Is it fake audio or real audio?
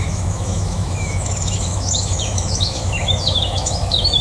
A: fake